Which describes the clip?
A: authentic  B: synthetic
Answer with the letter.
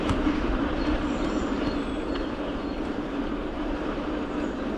B